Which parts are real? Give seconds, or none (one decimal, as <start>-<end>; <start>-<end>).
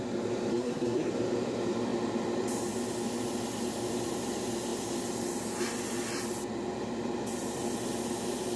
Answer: 0.0-0.5; 1.1-8.6